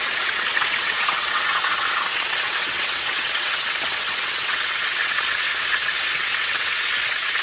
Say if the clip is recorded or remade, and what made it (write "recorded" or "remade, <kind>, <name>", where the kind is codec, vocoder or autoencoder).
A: remade, vocoder, WaveNeXt